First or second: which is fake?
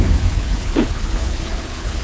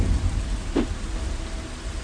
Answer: first